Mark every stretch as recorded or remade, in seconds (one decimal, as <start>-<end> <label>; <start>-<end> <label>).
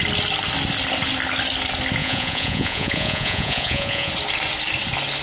0.0-2.0 recorded; 2.0-4.1 remade; 4.1-5.2 recorded